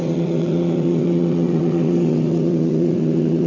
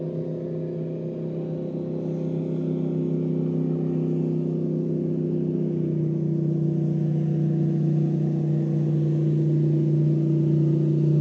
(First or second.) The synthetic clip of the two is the first